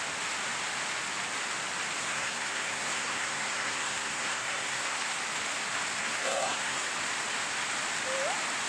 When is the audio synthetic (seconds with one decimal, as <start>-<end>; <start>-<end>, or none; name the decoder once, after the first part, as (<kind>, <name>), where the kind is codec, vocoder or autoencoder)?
2.0-5.2 (codec, SNAC); 6.0-6.9